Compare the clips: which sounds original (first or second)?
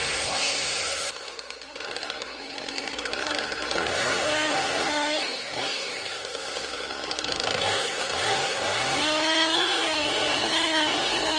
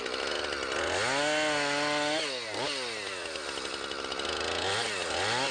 second